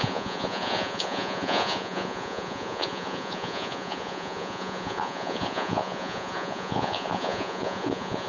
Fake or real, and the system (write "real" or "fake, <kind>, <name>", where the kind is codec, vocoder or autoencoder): fake, vocoder, Vocos